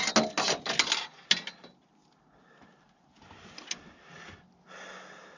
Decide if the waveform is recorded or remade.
recorded